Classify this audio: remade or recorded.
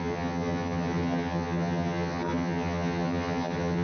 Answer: remade